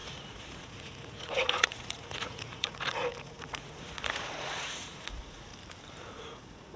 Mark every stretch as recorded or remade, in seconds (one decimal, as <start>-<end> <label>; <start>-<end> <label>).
0.0-5.5 remade; 5.5-6.1 recorded; 6.1-6.8 remade